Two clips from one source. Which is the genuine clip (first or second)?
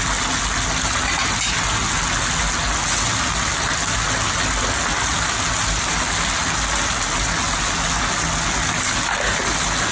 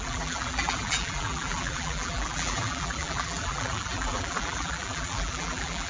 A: first